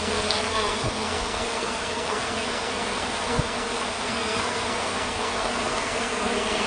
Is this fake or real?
fake